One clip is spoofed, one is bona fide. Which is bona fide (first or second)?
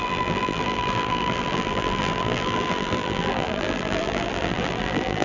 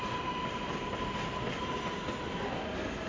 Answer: second